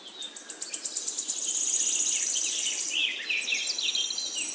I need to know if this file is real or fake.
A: real